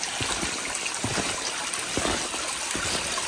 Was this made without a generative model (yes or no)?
yes